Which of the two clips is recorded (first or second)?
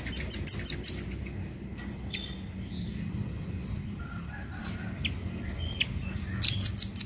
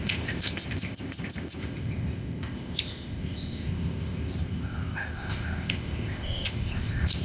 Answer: first